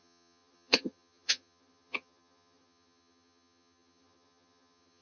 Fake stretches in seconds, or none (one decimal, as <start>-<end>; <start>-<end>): 0.0-5.0